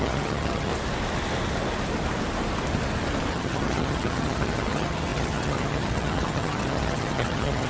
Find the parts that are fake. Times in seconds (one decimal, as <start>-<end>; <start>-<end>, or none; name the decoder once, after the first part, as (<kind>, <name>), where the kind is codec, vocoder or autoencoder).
0.0-0.7 (vocoder, HiFi-GAN); 3.3-7.7